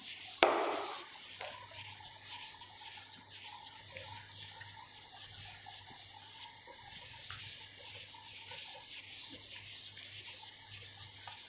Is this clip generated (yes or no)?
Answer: no